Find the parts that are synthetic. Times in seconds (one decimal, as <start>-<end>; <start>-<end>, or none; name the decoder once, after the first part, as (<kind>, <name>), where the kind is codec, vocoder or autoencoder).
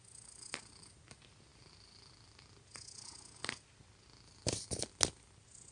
none